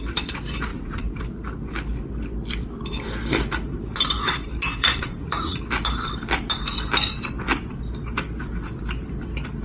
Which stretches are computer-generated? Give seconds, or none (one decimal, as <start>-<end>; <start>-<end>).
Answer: 0.7-1.2; 4.8-5.6